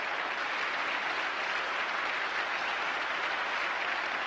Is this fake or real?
real